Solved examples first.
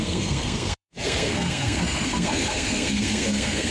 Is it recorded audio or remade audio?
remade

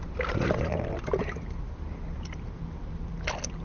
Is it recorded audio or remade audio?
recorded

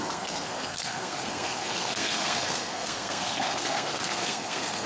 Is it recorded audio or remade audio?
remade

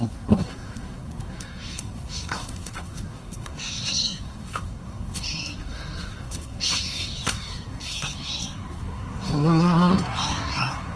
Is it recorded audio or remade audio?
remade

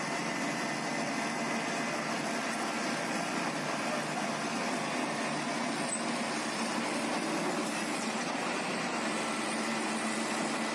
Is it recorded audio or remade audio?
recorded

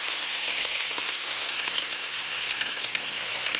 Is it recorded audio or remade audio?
remade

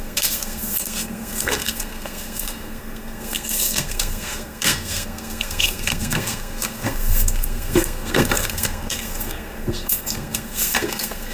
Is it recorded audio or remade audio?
remade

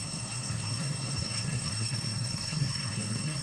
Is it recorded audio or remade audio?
remade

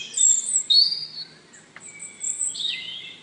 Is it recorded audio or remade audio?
recorded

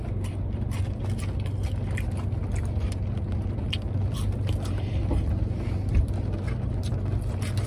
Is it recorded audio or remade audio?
recorded